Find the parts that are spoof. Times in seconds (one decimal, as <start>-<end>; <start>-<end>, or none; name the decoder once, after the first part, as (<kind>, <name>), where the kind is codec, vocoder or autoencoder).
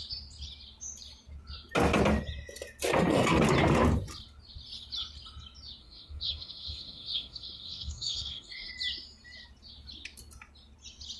5.8-8.7 (codec, SNAC)